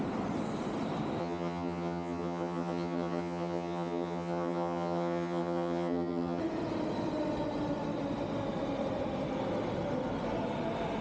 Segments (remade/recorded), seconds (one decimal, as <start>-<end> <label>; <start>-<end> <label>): 0.0-1.2 recorded; 1.2-6.4 remade; 6.4-11.0 recorded